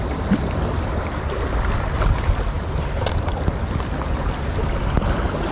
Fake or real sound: real